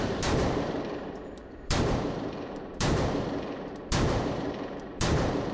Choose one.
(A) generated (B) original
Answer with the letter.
A